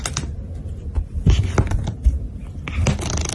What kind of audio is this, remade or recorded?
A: recorded